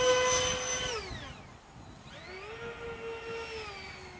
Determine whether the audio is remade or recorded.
recorded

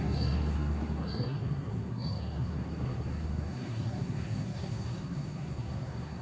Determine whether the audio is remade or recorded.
remade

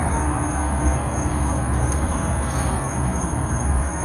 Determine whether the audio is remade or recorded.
remade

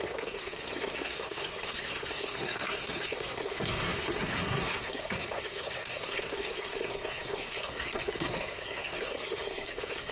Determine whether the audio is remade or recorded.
remade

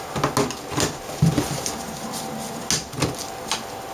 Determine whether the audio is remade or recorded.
recorded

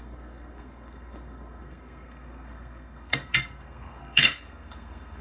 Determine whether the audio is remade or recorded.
remade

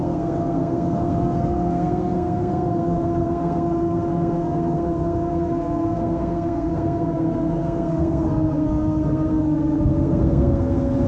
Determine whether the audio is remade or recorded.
remade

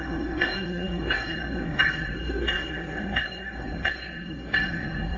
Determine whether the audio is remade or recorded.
remade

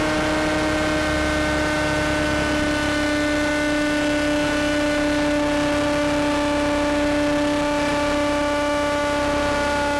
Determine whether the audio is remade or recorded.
recorded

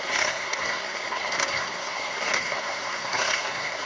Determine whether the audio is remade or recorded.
remade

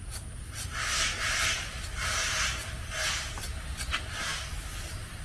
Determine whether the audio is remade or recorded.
recorded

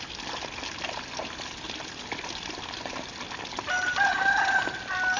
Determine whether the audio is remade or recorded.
recorded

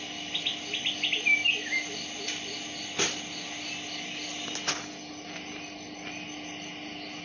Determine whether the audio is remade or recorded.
recorded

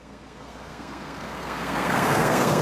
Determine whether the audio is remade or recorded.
remade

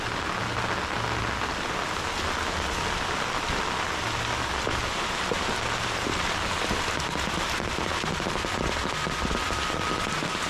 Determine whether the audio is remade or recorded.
recorded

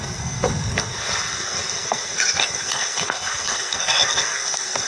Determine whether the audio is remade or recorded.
remade